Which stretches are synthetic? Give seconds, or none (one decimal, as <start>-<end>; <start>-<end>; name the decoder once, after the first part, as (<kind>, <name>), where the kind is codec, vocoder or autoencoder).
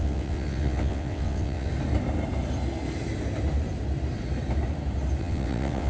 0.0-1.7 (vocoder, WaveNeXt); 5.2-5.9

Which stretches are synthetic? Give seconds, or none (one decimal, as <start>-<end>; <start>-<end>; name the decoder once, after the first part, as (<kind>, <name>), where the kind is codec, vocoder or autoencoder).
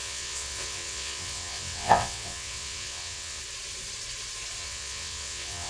0.0-3.4 (vocoder, WaveNeXt); 4.6-5.7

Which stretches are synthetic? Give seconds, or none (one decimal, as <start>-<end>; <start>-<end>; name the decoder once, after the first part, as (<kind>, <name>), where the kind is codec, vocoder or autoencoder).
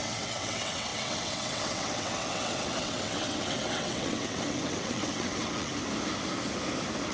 0.0-5.7 (vocoder, WaveNeXt)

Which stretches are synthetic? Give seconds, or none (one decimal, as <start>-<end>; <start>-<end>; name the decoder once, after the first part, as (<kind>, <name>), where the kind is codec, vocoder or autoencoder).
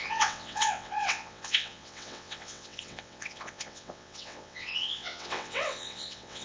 0.0-6.4 (vocoder, WaveNeXt)